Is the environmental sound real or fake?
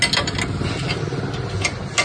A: real